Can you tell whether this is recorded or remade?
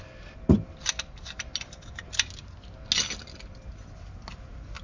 recorded